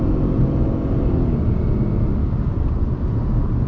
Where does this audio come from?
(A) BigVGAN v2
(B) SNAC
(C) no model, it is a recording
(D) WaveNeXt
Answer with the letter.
C